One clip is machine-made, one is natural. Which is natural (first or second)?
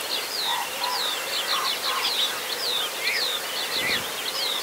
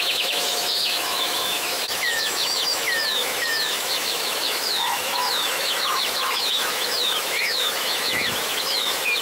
first